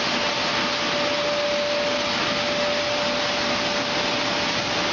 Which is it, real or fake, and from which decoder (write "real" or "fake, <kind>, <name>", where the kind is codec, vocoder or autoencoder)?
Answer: real